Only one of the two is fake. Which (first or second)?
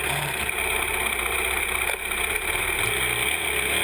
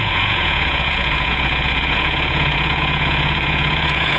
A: second